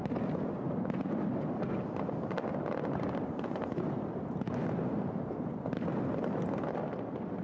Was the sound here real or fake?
real